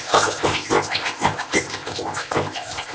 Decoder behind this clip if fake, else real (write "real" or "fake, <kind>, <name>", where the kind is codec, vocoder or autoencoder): fake, codec, ZipCodec